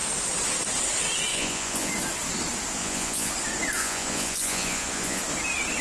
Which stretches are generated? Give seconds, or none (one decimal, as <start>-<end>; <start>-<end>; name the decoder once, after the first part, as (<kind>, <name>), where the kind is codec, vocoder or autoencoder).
1.3-1.9 (vocoder, Vocos); 2.8-3.3; 3.8-5.2